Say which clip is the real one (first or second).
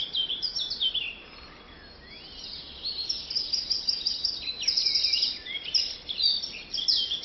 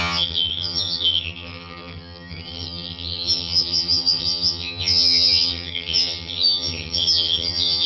first